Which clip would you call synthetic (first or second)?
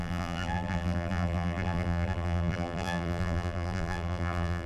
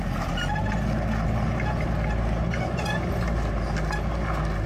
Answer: first